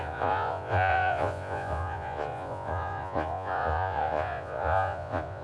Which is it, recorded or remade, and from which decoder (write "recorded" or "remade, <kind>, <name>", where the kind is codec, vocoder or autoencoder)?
remade, vocoder, Vocos